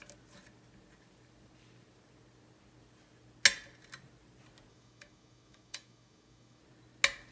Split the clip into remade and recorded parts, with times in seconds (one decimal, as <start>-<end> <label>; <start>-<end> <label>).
0.0-4.7 recorded; 4.7-6.6 remade; 6.6-7.3 recorded